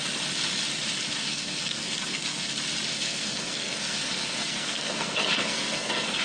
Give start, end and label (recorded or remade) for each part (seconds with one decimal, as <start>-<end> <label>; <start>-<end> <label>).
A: 0.0-1.2 recorded; 1.2-2.5 remade; 2.5-2.9 recorded; 2.9-6.2 remade